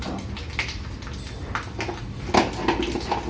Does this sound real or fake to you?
real